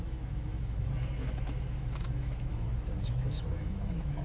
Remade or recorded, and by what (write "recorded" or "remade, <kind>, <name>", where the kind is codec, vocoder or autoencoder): remade, autoencoder, DAC-VAE